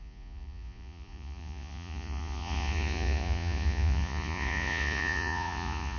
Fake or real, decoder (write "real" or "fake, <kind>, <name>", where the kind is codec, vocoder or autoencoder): fake, vocoder, Vocos